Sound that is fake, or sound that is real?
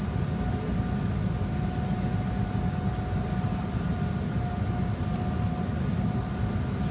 real